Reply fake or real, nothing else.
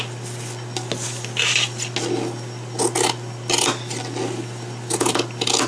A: real